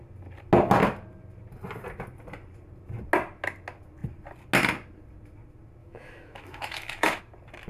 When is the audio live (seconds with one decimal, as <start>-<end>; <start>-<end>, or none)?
0.0-5.8; 7.2-7.7